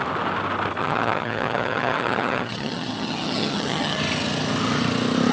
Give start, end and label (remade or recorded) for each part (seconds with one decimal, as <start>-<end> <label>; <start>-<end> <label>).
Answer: 0.0-0.8 recorded; 0.8-4.0 remade; 4.0-5.3 recorded